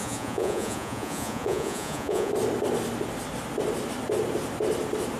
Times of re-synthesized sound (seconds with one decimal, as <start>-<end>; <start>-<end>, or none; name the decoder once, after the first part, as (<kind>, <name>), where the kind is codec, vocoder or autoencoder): 0.0-2.3 (vocoder, Vocos)